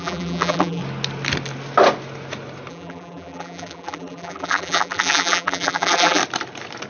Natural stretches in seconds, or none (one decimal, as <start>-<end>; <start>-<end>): 0.8-2.7; 6.2-6.9